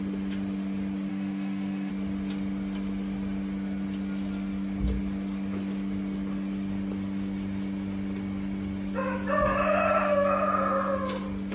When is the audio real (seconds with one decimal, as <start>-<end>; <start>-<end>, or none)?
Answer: 0.0-1.1; 1.9-11.5